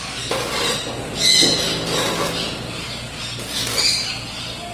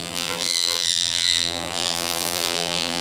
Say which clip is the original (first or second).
first